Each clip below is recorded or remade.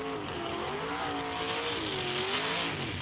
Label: recorded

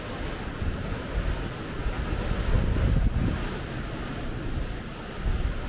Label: recorded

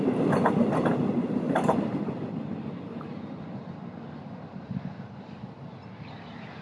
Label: remade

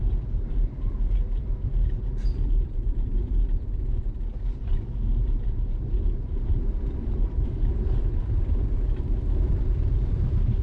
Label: remade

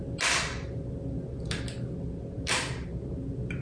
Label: recorded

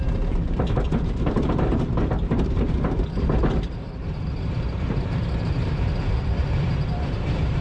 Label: remade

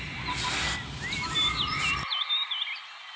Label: recorded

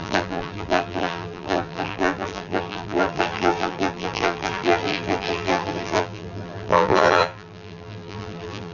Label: remade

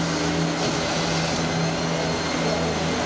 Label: recorded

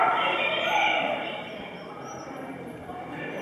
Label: remade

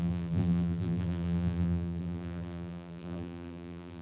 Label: remade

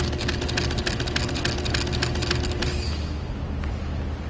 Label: recorded